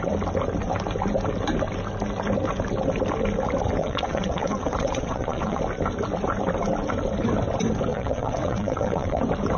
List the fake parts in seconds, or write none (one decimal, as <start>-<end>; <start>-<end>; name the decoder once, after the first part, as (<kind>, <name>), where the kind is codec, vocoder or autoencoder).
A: 3.8-5.6 (vocoder, WaveNeXt); 7.9-9.2